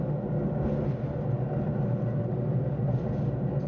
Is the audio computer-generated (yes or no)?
no